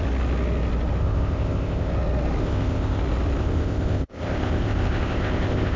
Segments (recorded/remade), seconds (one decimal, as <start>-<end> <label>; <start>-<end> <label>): 0.0-1.0 recorded; 1.0-1.9 remade; 1.9-2.4 recorded; 2.4-3.0 remade; 3.0-3.4 recorded; 3.4-5.8 remade